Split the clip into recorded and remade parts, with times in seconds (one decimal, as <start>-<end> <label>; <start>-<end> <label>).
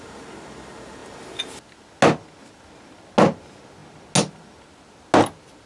0.0-5.7 recorded